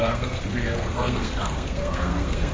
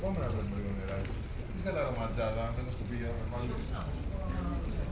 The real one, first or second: second